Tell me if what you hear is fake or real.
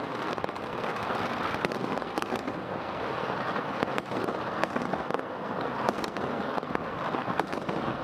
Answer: fake